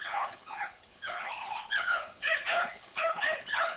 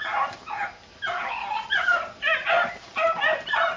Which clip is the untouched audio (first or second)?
second